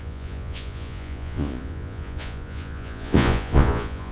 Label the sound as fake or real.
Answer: fake